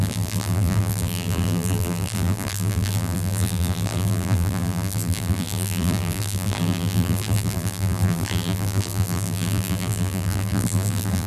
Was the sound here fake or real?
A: fake